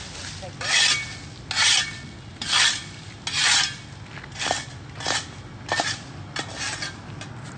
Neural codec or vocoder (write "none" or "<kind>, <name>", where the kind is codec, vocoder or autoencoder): none